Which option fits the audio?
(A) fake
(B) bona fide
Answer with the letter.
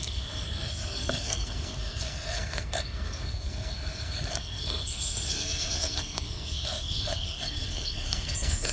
A